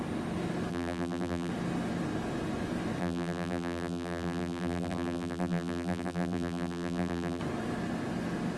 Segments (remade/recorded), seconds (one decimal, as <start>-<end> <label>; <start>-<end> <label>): 0.0-0.7 recorded; 0.7-1.5 remade; 1.5-3.0 recorded; 3.0-7.4 remade; 7.4-8.6 recorded